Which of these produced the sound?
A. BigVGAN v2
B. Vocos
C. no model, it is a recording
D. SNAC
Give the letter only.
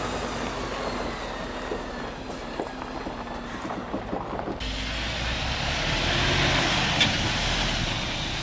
C